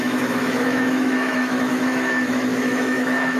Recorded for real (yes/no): no